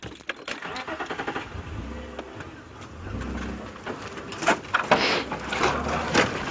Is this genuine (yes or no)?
yes